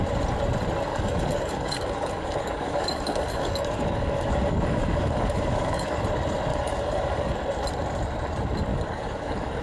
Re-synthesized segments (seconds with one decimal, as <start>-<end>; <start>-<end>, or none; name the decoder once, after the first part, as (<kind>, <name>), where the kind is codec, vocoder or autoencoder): 0.9-6.0 (codec, DAC); 6.5-7.3; 8.7-9.6